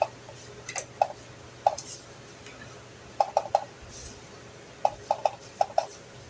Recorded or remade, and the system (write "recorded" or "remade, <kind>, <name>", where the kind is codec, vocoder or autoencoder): recorded